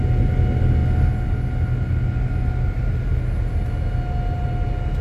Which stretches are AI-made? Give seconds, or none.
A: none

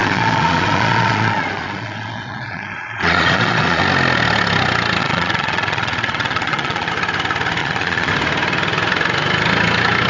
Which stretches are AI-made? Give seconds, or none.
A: 0.0-3.8 (vocoder, Vocos); 5.0-6.9; 7.6-8.1

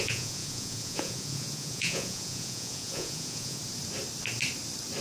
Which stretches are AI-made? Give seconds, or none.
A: 0.0-3.6 (vocoder, Vocos)

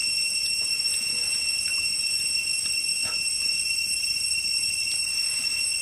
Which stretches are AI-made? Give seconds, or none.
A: 0.0-2.4 (vocoder, Vocos); 2.9-3.6

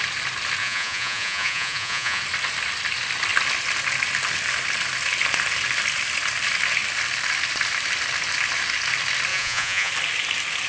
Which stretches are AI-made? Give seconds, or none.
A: 0.6-2.2 (vocoder, Vocos); 9.3-9.9